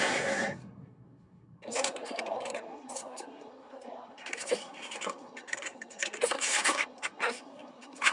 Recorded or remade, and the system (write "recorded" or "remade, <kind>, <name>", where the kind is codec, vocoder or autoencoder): remade, codec, SNAC